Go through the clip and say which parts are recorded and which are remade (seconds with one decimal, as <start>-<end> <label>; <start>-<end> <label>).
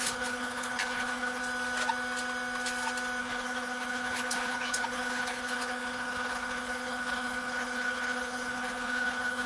0.0-1.4 remade; 1.4-3.2 recorded; 3.2-9.5 remade